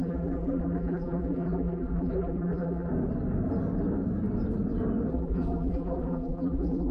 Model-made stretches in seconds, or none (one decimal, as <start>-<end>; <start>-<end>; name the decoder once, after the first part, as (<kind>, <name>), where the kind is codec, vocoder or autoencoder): 0.0-2.9 (vocoder, BigVGAN v2); 5.1-6.9

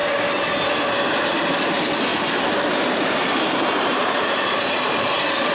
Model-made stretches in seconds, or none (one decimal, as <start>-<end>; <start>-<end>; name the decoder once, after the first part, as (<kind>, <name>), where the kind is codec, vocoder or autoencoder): 2.1-5.5 (vocoder, BigVGAN v2)

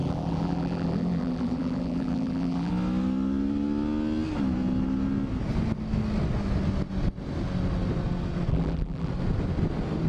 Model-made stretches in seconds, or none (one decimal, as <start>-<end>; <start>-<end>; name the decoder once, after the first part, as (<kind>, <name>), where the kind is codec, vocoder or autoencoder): 0.0-2.7 (vocoder, BigVGAN v2); 8.5-9.1

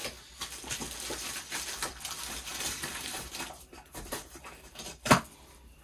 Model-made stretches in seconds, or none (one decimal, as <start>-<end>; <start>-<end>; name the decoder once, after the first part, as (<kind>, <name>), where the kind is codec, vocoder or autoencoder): 2.5-5.2 (vocoder, BigVGAN v2)